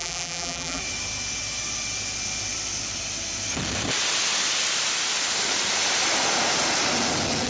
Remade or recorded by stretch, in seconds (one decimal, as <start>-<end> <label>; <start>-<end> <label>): 0.0-0.8 remade; 0.8-7.5 recorded